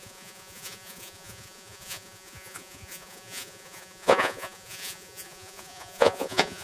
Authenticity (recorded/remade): remade